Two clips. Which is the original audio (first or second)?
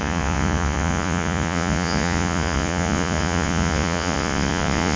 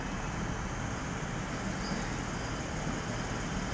second